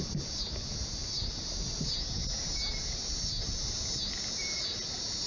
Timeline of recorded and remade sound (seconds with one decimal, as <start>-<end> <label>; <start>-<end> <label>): 0.0-5.3 recorded